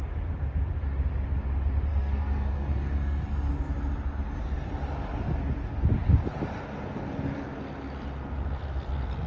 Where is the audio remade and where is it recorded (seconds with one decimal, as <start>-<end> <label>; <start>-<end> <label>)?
0.0-1.9 recorded; 1.9-3.5 remade; 3.5-9.3 recorded

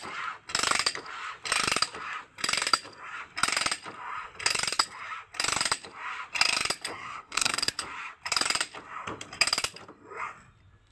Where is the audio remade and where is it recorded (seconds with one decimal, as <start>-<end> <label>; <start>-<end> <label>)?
0.0-6.9 recorded; 6.9-7.7 remade; 7.7-10.9 recorded

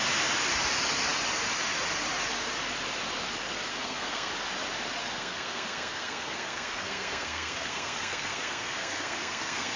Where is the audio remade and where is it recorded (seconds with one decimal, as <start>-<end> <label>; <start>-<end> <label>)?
0.0-3.7 recorded; 3.7-4.3 remade; 4.3-5.0 recorded; 5.0-9.8 remade

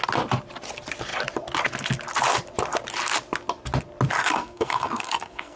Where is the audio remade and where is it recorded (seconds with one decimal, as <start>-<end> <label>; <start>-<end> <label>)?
0.0-4.2 recorded; 4.2-5.6 remade

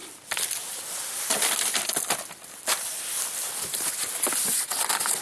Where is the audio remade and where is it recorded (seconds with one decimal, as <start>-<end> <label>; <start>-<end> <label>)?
0.0-5.2 recorded